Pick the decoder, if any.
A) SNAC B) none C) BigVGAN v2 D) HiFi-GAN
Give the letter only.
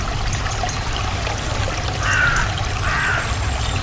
B